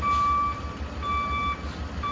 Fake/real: real